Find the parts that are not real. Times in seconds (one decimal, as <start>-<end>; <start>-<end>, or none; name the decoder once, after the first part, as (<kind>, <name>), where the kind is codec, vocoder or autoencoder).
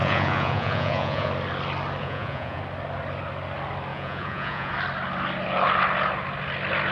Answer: 0.0-1.3 (vocoder, Vocos); 2.0-2.6; 3.9-4.7